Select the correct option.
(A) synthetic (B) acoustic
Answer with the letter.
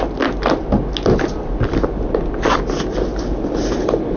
B